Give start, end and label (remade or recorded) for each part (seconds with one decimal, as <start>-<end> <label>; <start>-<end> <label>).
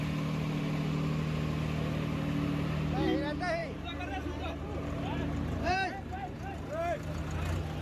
0.0-3.6 recorded; 3.6-7.2 remade; 7.2-7.8 recorded